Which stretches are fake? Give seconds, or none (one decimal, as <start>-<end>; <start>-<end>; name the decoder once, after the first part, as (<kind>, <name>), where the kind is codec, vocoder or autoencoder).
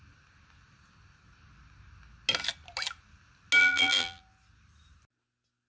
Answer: 3.6-4.2 (vocoder, BigVGAN v2)